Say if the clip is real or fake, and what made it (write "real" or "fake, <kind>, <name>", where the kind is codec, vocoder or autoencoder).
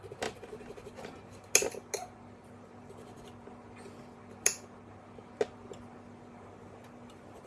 real